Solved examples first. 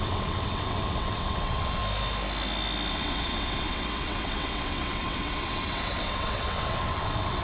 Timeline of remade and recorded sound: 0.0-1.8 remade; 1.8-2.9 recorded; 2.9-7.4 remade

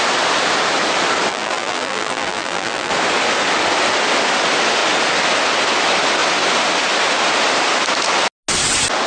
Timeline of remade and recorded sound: 0.0-1.3 recorded; 1.3-2.9 remade; 2.9-9.1 recorded

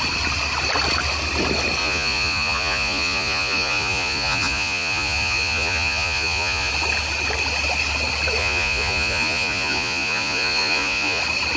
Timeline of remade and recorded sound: 0.0-1.8 recorded; 1.8-6.7 remade; 6.7-8.4 recorded; 8.4-11.2 remade; 11.2-11.6 recorded